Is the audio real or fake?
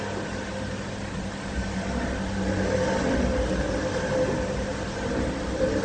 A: real